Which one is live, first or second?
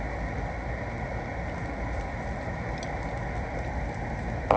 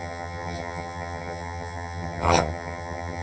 first